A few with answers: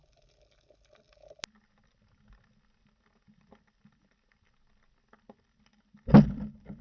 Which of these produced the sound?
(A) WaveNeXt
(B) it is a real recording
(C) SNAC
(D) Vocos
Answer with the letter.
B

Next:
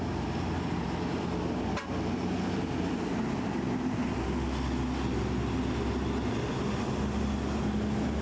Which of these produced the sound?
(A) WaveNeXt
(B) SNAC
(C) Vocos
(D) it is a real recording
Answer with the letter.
D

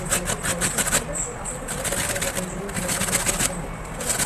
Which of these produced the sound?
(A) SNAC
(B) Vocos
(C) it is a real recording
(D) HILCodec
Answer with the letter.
C